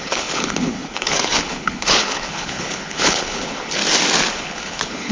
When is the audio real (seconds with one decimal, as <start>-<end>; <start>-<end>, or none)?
3.8-4.3